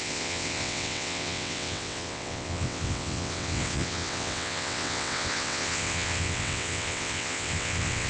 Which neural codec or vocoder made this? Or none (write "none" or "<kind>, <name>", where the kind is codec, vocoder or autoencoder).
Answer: vocoder, WaveNeXt